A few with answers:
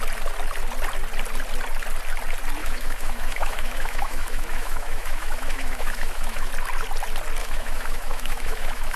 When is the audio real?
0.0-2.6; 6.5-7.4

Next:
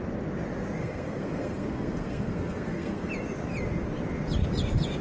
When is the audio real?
0.0-0.8; 3.1-5.0

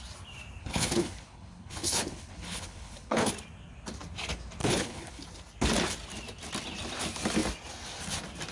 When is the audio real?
0.0-0.6; 3.3-4.6; 5.2-8.5

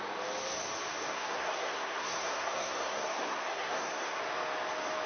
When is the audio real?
0.0-1.1; 4.2-5.1

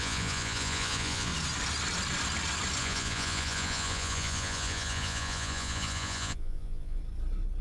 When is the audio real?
1.3-2.8; 7.0-7.6